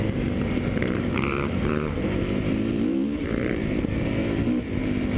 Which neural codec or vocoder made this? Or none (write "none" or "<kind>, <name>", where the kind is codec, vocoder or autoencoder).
vocoder, BigVGAN v2